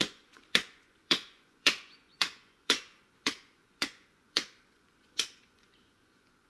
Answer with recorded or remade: remade